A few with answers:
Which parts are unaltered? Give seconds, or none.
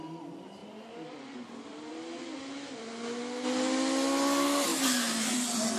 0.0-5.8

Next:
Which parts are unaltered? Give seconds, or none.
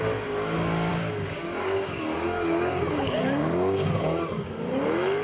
none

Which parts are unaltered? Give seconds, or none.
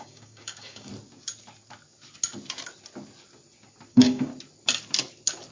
0.9-3.9; 4.3-5.5